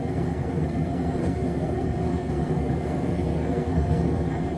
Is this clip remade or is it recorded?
remade